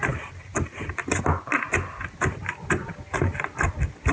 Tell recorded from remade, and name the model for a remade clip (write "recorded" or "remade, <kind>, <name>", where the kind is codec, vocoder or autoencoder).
recorded